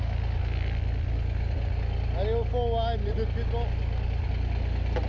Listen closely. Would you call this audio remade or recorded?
recorded